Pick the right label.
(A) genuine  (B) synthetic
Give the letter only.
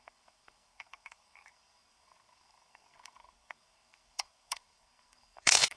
B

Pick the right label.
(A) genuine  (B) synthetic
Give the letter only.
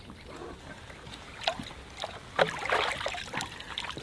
A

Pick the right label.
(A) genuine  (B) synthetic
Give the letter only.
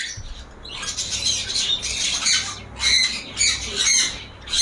A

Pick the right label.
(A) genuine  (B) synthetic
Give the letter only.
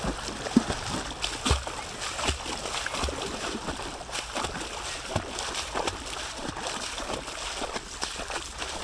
A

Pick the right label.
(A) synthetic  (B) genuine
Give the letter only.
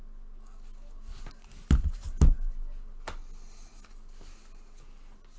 B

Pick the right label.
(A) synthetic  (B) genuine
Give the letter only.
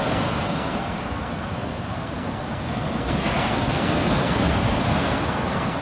A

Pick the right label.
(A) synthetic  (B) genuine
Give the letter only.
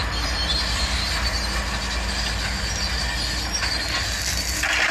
B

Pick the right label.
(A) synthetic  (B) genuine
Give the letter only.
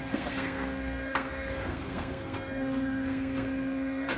A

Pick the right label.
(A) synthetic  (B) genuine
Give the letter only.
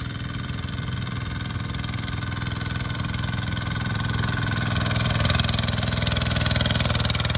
B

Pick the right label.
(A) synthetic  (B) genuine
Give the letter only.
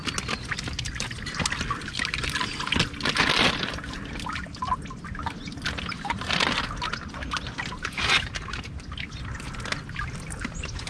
B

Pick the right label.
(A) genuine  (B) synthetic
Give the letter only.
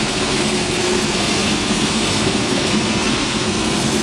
B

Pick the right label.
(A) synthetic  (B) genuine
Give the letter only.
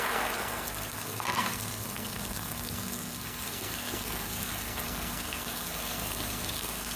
A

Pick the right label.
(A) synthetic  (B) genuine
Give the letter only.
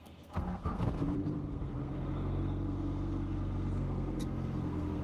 A